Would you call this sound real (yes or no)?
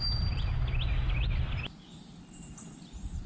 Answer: yes